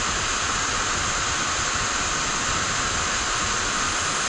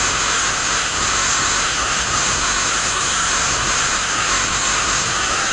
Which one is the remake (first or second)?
second